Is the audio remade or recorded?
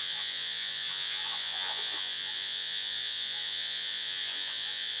remade